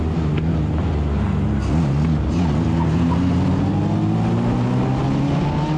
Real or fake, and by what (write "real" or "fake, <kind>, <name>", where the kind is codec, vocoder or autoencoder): real